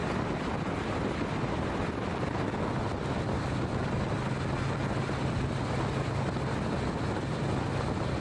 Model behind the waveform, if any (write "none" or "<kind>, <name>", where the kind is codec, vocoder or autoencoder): none